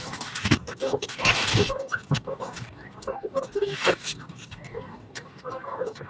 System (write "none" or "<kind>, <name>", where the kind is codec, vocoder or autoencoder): codec, DAC